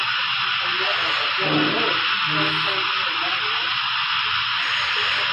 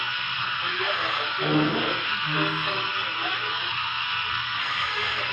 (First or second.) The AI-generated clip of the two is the second